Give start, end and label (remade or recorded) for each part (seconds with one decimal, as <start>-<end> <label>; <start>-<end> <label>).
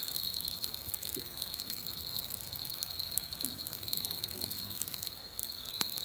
0.0-6.0 remade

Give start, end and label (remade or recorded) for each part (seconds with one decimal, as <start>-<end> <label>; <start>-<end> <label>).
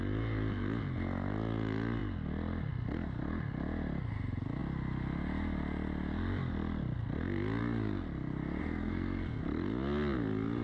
0.0-8.6 recorded; 8.6-9.4 remade; 9.4-10.6 recorded